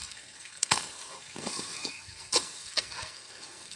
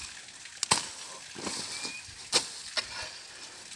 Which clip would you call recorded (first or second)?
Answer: second